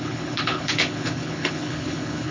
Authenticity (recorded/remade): remade